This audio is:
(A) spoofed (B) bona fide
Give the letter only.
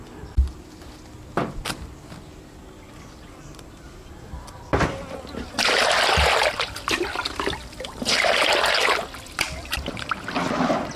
B